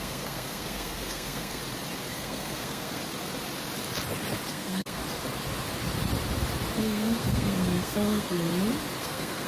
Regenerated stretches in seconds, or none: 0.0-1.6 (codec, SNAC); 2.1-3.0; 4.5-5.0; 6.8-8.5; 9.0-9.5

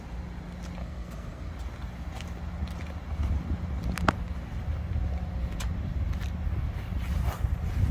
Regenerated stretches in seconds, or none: 0.8-1.5 (codec, SNAC)

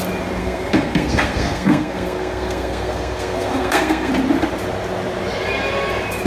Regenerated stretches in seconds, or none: 0.4-4.1 (codec, SNAC)

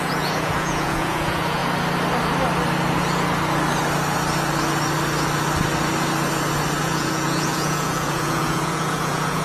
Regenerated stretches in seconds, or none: 0.0-1.6 (vocoder, Vocos); 6.8-9.4

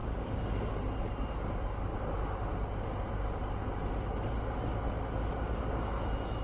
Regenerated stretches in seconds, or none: 0.0-0.8 (codec, DAC)

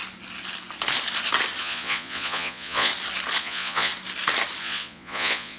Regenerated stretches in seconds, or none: 1.6-2.9 (vocoder, Vocos); 3.4-3.9; 4.6-5.6